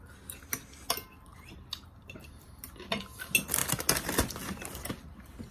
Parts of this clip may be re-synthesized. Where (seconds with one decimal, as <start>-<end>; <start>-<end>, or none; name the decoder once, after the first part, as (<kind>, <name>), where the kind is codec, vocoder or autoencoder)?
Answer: 1.3-3.0 (vocoder, BigVGAN v2)